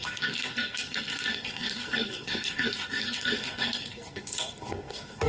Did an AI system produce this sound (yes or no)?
yes